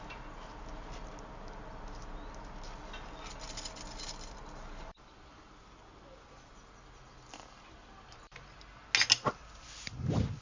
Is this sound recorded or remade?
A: recorded